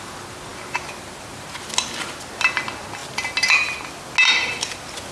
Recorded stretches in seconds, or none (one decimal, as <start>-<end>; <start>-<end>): 0.0-5.1